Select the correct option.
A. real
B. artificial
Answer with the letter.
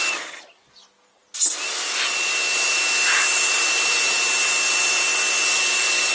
A